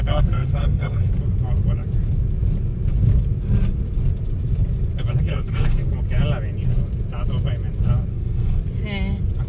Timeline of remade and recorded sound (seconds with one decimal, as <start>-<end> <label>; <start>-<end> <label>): 0.0-1.1 remade; 1.1-5.3 recorded; 5.3-5.9 remade; 5.9-8.1 recorded; 8.1-8.6 remade; 8.6-9.5 recorded